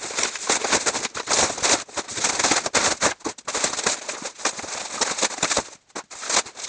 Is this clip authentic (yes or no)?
yes